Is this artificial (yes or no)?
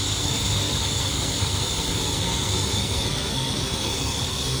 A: yes